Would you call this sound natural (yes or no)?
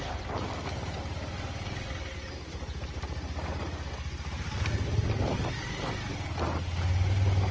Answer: yes